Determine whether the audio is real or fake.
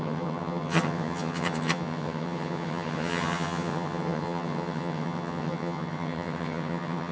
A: fake